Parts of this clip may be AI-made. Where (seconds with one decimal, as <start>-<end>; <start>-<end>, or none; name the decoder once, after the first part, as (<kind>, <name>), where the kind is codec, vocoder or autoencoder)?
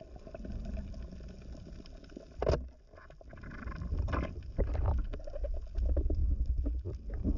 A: none